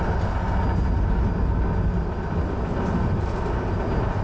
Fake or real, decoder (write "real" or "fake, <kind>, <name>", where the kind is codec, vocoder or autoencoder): real